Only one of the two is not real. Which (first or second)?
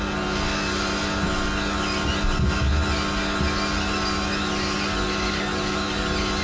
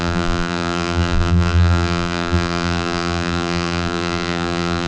second